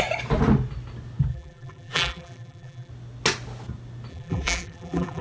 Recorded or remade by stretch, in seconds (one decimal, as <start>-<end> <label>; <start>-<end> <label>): 0.0-1.3 recorded; 1.3-2.9 remade; 2.9-4.1 recorded; 4.1-5.2 remade